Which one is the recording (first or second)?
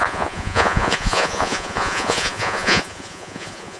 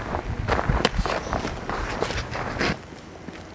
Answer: second